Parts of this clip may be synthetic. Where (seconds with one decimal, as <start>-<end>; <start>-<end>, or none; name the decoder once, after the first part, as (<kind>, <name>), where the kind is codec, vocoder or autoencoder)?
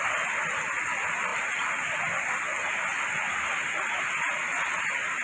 none